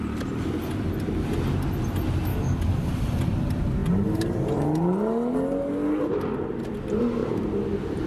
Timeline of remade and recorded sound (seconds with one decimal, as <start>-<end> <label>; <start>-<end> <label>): 0.0-2.3 recorded; 2.3-2.9 remade; 2.9-8.1 recorded